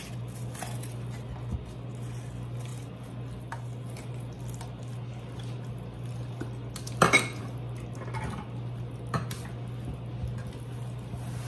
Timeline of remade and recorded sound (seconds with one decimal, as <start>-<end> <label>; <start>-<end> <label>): 0.0-11.5 recorded